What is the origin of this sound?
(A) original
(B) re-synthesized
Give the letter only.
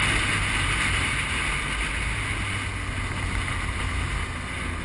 A